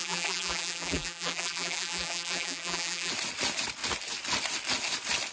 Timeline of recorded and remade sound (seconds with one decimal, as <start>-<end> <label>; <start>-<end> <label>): 0.0-3.1 remade; 3.1-5.3 recorded